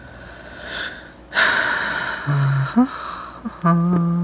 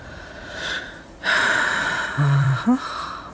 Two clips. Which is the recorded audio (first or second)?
first